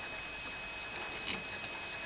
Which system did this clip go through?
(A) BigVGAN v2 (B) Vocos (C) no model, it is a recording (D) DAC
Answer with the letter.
C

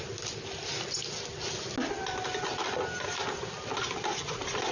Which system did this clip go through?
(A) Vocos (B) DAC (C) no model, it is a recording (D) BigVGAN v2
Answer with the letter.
C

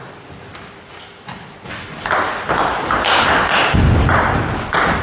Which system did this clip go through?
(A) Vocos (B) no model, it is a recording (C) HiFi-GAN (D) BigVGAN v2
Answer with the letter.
B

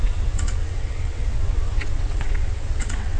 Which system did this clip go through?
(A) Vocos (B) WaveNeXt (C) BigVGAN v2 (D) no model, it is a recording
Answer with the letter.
B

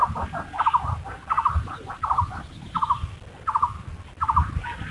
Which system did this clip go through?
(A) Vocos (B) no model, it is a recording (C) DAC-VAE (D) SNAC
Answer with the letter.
B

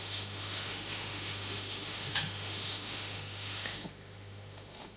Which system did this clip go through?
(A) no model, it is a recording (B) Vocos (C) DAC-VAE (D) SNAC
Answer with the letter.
C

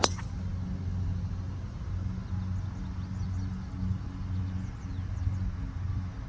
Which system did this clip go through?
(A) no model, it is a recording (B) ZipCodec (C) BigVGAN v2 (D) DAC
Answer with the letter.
A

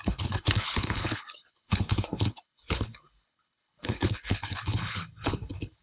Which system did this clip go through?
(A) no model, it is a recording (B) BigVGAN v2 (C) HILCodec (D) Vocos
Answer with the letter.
C